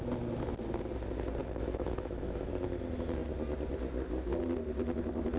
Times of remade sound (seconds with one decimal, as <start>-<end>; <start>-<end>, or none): 1.4-2.5